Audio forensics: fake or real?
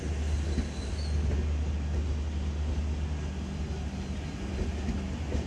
real